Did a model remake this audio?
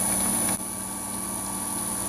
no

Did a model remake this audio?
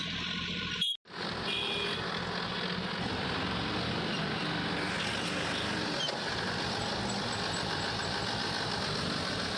no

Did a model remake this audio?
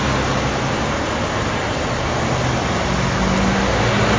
no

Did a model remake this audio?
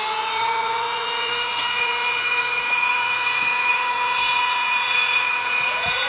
yes